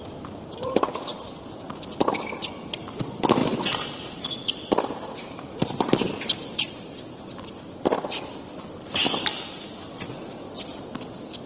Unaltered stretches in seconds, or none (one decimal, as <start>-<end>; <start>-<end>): 3.4-8.6; 9.3-10.0